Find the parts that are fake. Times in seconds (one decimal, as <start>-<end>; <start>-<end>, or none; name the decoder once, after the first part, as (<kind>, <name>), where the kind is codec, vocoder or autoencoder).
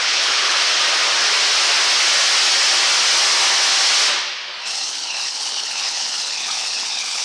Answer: 0.0-0.6 (codec, HILCodec); 4.7-7.2